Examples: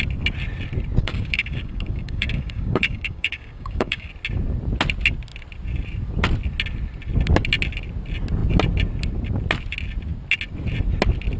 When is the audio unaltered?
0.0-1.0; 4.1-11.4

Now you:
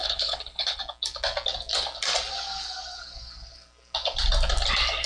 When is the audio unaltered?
0.8-5.1

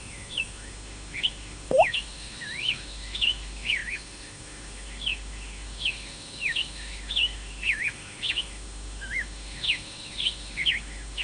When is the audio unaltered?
none

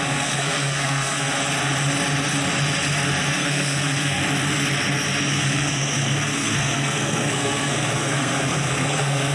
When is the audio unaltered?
1.3-3.3; 4.2-5.3

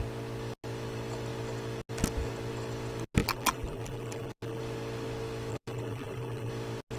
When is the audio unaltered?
0.0-3.2; 4.6-5.5; 6.5-7.0